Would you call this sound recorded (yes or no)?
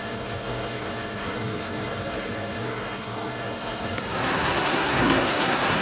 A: no